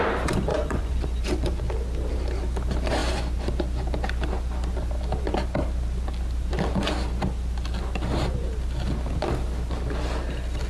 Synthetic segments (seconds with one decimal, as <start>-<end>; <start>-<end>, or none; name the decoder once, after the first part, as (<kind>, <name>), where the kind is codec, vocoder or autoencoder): 0.5-1.6 (vocoder, Vocos)